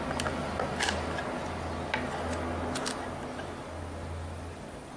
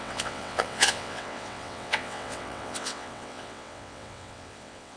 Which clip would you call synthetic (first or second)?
second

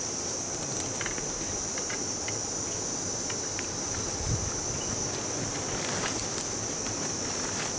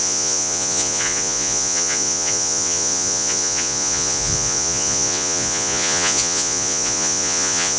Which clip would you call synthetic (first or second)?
second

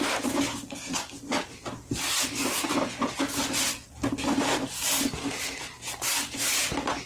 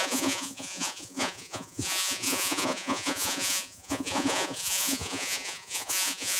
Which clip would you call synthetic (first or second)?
second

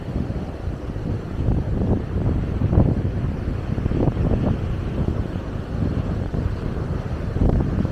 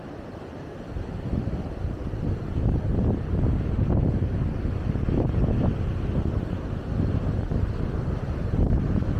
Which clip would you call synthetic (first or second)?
first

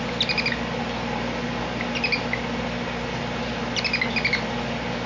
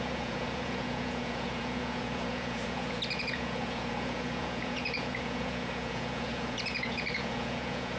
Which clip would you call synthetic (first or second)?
second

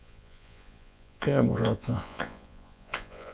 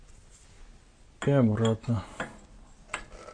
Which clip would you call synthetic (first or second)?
first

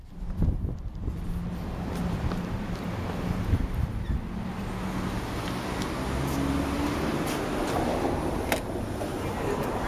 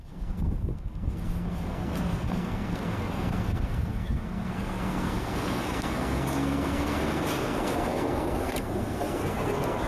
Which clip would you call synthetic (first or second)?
second